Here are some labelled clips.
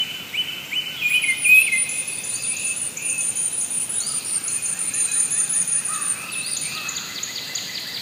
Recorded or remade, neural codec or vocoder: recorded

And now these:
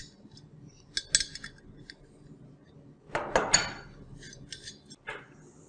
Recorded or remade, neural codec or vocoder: recorded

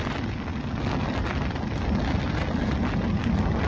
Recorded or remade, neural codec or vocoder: recorded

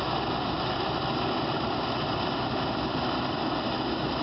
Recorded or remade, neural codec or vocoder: recorded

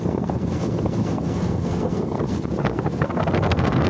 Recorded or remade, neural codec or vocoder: remade, codec, SNAC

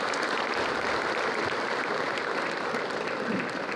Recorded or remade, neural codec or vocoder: recorded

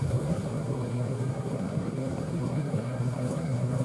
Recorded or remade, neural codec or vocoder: remade, codec, SNAC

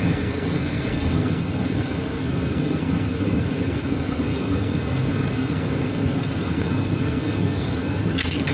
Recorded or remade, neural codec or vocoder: remade, codec, SNAC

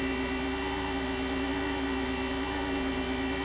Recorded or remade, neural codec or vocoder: recorded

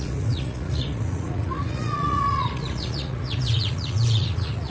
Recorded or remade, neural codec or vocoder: remade, vocoder, Vocos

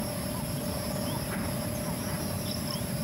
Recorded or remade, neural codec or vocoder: recorded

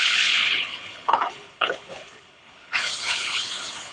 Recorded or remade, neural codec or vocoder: remade, codec, HILCodec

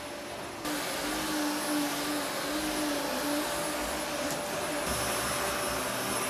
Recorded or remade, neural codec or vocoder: recorded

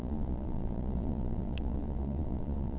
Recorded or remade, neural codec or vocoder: remade, vocoder, Vocos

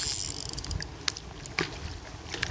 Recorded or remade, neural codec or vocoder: recorded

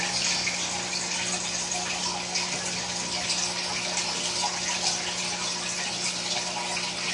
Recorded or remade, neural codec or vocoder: recorded